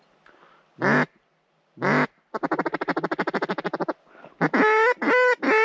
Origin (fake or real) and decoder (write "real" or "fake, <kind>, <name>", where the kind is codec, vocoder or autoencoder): real